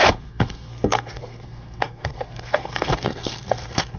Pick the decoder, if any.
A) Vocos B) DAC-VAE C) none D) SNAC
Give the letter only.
D